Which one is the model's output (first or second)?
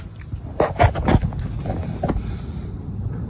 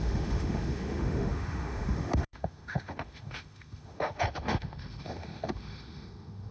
second